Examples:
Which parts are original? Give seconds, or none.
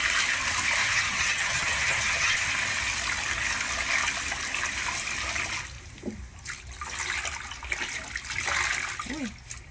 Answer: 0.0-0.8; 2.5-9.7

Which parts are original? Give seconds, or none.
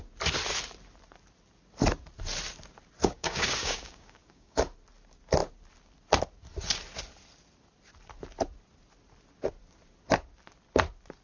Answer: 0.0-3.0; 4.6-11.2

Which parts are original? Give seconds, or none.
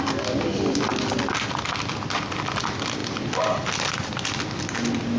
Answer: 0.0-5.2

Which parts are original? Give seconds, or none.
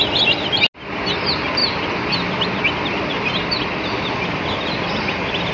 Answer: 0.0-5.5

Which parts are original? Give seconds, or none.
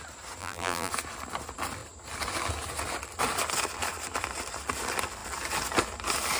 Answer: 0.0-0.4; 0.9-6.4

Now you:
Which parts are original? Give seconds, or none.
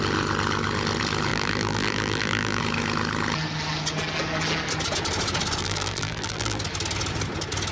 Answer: 0.0-1.3; 2.6-5.6; 6.6-7.7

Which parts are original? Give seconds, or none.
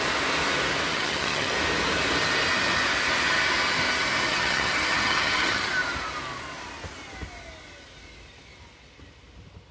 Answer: 0.0-0.9; 1.5-4.3; 5.7-9.7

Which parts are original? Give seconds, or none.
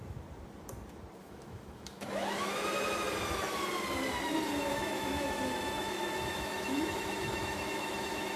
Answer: 0.0-1.2; 2.5-4.7